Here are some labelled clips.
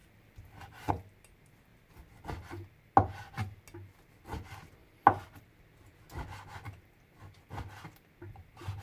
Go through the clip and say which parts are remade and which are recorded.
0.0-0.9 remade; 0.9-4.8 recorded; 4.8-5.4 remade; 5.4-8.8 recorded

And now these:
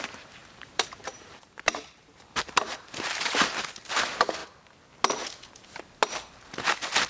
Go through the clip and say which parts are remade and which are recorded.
0.0-4.4 remade; 4.4-7.1 recorded

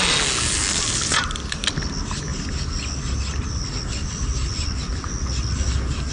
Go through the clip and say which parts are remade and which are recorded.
0.0-6.1 recorded

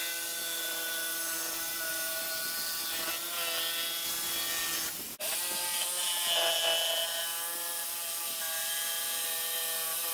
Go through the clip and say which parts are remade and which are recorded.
0.0-10.1 recorded

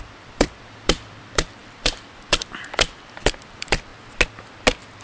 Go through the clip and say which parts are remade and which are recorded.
0.0-3.9 remade; 3.9-5.0 recorded